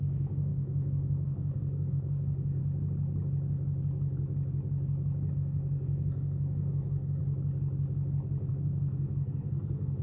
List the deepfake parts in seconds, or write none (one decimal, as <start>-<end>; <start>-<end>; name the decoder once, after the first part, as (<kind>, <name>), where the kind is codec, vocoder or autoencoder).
0.0-2.6 (codec, SNAC); 5.3-7.2; 8.5-10.0